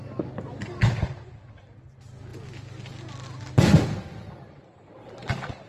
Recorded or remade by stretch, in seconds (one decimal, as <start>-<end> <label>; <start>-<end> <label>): 0.0-5.7 recorded